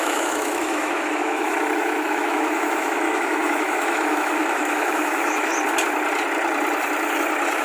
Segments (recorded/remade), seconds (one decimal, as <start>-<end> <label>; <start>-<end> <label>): 0.0-5.5 remade; 5.5-7.6 recorded